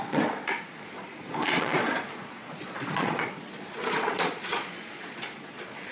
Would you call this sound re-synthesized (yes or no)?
yes